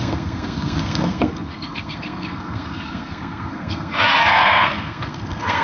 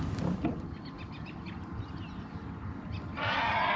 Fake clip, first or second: first